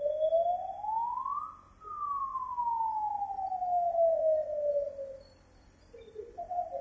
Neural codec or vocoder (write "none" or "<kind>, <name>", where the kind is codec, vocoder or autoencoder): none